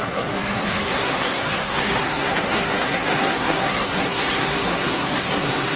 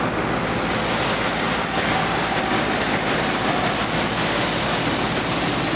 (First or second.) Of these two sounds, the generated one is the first